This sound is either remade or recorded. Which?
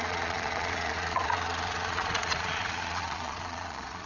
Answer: remade